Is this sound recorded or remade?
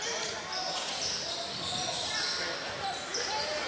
recorded